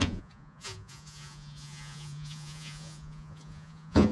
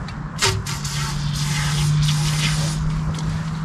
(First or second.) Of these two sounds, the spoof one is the first